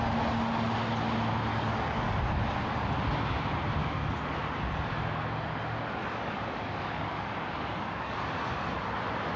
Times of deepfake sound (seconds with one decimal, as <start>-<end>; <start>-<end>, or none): 1.5-2.2; 3.8-4.4; 6.0-8.3